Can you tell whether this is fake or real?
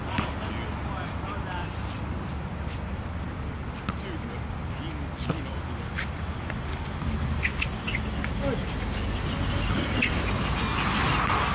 real